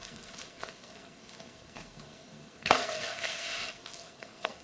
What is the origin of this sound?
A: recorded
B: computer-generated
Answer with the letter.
B